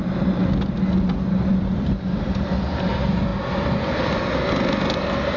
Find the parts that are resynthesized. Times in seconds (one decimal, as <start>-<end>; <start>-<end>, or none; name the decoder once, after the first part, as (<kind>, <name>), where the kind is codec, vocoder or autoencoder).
none